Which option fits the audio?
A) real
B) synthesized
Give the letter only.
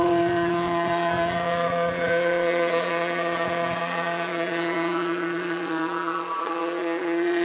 B